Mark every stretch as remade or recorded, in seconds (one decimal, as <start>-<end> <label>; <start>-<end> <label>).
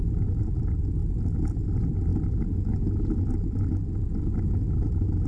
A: 0.0-5.3 recorded